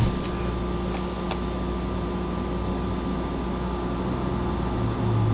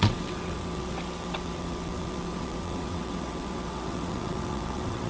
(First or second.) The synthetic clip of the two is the second